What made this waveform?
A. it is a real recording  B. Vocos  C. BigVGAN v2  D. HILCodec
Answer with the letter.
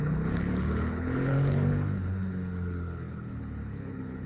D